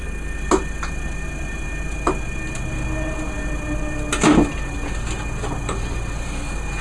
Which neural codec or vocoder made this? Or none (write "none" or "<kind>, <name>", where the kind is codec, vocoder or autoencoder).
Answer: none